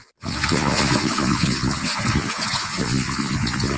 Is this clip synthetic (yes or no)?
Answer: yes